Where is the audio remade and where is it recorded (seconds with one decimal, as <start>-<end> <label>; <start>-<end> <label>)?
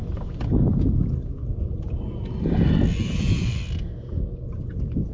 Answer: 0.0-5.1 recorded